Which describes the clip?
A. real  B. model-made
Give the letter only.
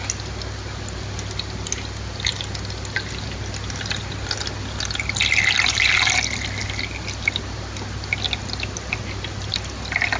A